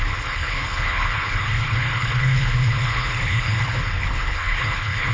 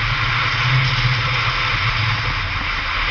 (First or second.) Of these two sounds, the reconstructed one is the first